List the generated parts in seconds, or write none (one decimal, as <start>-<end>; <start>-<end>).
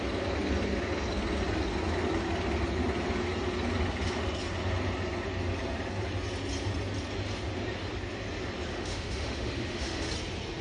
8.7-10.1